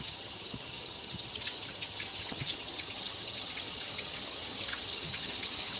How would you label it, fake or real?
fake